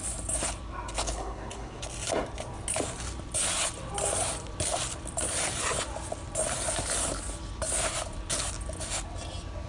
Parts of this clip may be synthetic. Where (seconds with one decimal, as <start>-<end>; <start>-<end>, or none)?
1.0-1.8